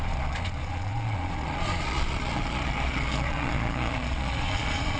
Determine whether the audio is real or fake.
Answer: fake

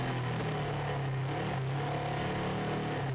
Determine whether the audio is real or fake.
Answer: real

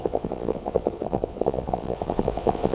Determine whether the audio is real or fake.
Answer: fake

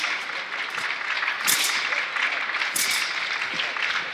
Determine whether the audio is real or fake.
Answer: real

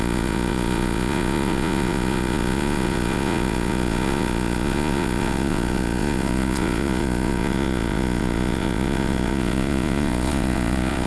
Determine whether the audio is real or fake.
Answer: fake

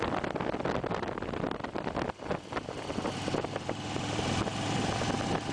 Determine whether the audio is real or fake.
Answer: real